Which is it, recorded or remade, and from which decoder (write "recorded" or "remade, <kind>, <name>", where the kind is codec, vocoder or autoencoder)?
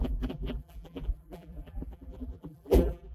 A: remade, vocoder, BigVGAN v2